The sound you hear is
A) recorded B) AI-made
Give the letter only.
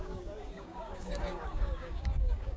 B